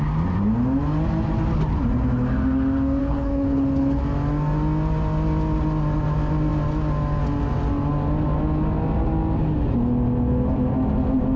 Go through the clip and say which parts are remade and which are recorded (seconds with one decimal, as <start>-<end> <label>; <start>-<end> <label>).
0.0-3.0 recorded; 3.0-4.0 remade; 4.0-11.4 recorded